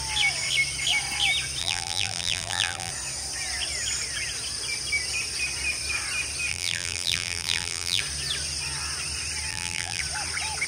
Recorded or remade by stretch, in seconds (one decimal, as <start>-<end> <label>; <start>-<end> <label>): 0.0-1.6 recorded; 1.6-2.9 remade; 2.9-6.5 recorded; 6.5-8.0 remade; 8.0-9.5 recorded; 9.5-10.0 remade; 10.0-10.7 recorded